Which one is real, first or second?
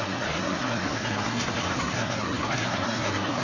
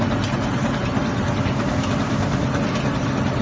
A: second